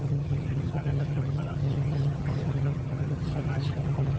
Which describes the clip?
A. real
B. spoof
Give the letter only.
B